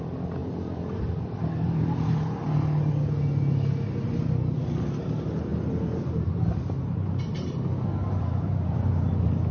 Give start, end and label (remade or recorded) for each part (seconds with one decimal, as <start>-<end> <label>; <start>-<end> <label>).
0.0-0.4 recorded; 0.4-3.0 remade; 3.0-9.5 recorded